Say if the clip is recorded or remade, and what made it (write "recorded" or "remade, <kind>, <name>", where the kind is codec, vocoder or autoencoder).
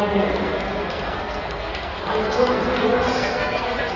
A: remade, codec, SNAC